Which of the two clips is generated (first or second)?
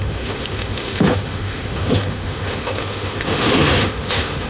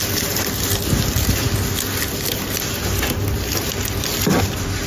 first